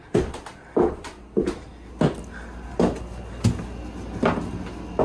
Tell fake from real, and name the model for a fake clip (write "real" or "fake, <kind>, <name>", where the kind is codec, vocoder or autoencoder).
real